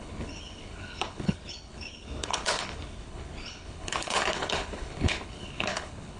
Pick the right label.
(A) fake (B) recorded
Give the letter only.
A